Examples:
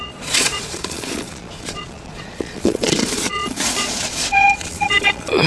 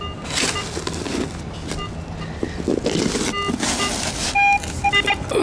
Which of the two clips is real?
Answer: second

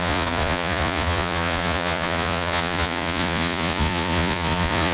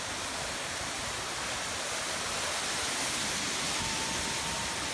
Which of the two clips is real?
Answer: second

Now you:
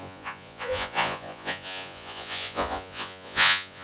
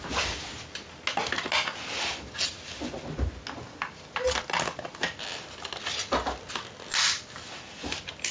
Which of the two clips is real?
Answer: second